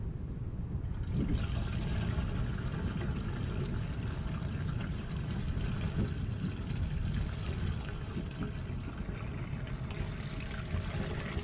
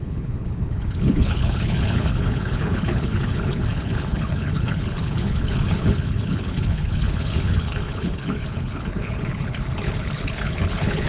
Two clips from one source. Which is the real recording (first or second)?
first